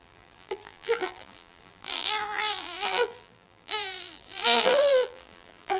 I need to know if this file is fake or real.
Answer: fake